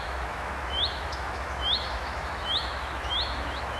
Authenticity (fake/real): fake